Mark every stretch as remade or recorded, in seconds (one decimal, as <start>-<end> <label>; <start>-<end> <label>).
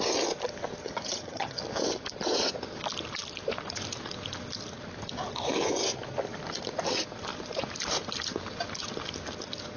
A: 0.0-0.8 recorded; 0.8-1.6 remade; 1.6-9.8 recorded